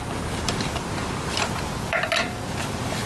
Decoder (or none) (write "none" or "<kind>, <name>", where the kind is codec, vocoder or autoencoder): none